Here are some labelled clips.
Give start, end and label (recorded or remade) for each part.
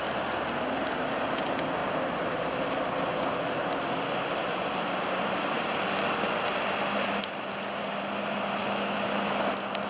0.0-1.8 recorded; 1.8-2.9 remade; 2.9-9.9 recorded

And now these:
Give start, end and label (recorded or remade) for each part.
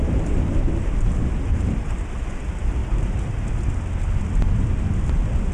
0.0-0.7 remade; 0.7-1.5 recorded; 1.5-2.1 remade; 2.1-2.8 recorded; 2.8-3.5 remade; 3.5-5.5 recorded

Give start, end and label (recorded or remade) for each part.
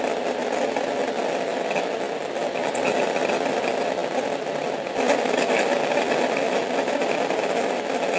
0.0-6.6 recorded; 6.6-7.6 remade; 7.6-8.2 recorded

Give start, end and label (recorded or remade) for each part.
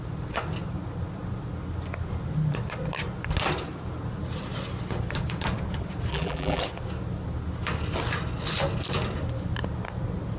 0.0-6.1 recorded; 6.1-6.6 remade; 6.6-10.4 recorded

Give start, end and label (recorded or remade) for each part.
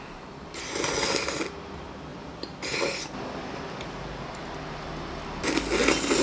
0.0-2.1 recorded; 2.1-2.8 remade; 2.8-6.2 recorded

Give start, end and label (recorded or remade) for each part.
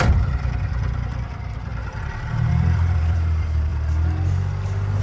0.0-3.7 remade; 3.7-5.0 recorded